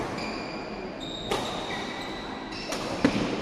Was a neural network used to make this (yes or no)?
no